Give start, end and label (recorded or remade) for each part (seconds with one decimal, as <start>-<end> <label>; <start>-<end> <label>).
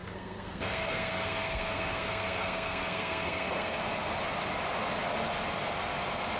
0.0-3.8 remade; 3.8-6.4 recorded